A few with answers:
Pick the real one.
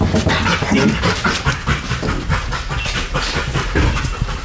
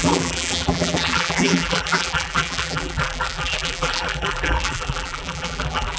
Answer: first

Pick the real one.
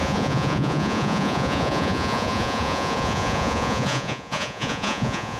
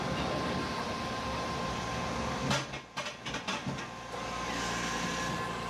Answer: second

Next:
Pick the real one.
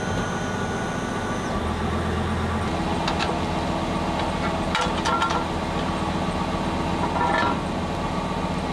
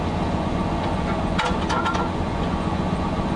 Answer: first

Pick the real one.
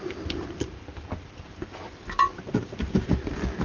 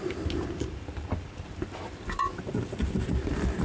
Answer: first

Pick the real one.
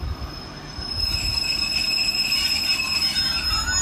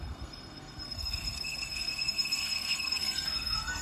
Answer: first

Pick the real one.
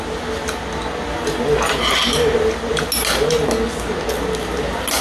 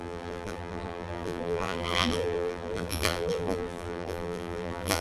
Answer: first